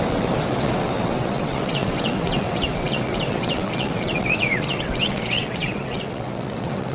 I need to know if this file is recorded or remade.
remade